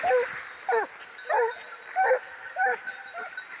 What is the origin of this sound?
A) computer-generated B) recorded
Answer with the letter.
B